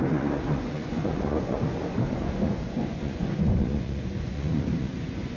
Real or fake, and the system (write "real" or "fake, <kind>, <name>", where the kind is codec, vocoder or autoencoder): fake, vocoder, Vocos